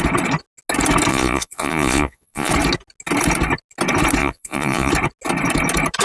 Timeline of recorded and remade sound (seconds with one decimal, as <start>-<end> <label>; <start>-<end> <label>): 0.0-1.1 recorded; 1.1-2.5 remade; 2.5-4.2 recorded; 4.2-4.9 remade; 4.9-6.0 recorded